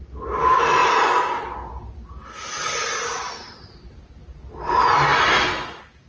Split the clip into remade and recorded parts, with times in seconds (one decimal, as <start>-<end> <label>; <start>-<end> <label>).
0.0-6.1 recorded